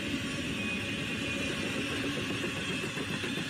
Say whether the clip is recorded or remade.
recorded